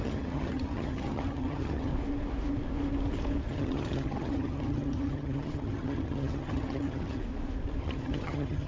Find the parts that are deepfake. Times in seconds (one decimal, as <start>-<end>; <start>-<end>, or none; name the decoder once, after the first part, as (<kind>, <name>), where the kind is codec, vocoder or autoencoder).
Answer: 0.0-1.9 (vocoder, HiFi-GAN); 3.5-7.2; 7.8-8.7